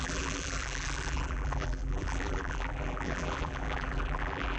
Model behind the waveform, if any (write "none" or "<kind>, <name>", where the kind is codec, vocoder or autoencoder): vocoder, BigVGAN v2